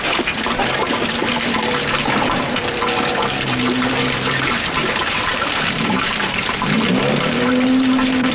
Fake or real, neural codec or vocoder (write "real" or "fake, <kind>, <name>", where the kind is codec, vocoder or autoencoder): fake, vocoder, BigVGAN v2